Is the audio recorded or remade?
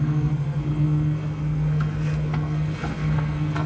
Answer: remade